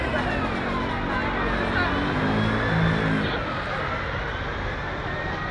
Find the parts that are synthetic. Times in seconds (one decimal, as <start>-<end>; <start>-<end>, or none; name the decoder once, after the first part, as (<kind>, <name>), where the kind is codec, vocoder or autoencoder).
none